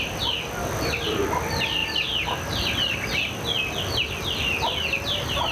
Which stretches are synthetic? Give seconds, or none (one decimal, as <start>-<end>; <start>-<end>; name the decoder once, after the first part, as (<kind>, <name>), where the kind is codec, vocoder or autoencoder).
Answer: 0.0-5.5 (vocoder, BigVGAN v2)